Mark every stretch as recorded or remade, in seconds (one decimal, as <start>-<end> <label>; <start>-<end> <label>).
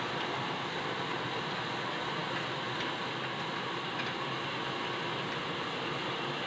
0.0-6.5 recorded